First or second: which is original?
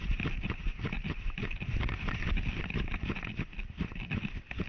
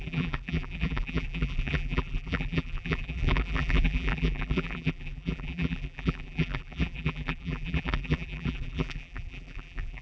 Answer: first